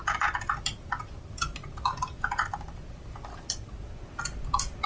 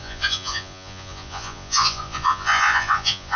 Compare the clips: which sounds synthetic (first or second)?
second